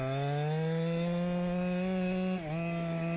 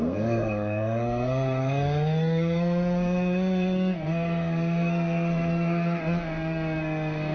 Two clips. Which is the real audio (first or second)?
first